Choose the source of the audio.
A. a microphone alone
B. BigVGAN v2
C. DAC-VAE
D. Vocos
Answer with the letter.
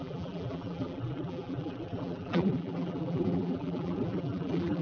B